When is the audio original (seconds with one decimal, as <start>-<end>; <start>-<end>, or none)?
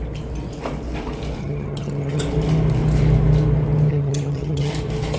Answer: 0.0-1.4; 2.2-3.9; 4.7-5.2